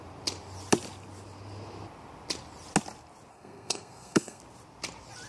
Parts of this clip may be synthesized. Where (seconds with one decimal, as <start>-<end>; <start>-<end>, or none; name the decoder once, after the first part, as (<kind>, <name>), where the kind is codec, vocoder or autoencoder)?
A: 3.3-4.4 (codec, SNAC)